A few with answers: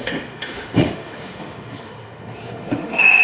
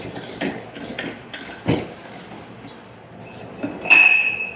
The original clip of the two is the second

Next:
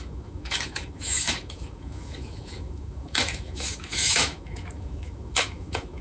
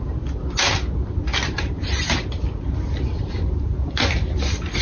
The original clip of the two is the second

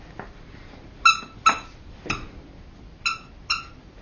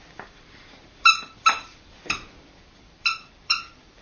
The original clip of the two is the first